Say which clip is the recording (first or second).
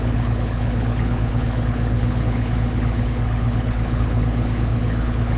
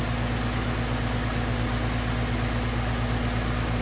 second